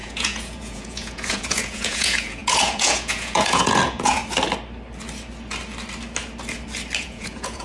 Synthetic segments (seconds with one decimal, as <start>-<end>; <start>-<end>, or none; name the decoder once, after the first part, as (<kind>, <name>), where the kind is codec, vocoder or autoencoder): 0.0-4.2 (vocoder, Vocos); 7.0-7.6